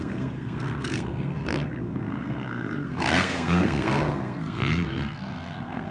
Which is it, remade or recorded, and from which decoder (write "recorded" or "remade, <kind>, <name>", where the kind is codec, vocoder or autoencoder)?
remade, codec, SNAC